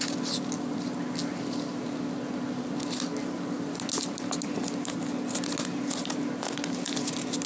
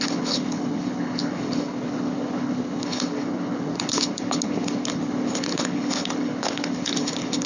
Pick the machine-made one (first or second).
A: second